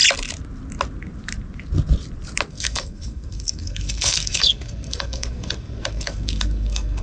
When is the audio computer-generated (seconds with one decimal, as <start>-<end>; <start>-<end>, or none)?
2.5-7.0